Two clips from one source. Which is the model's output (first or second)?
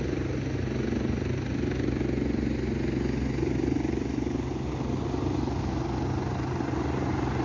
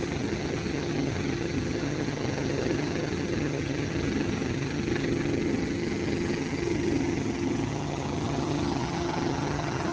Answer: second